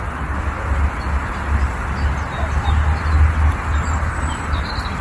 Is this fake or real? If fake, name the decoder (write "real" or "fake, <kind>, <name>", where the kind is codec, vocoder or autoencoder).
real